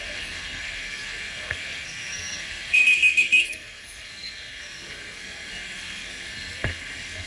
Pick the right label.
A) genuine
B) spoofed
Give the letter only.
B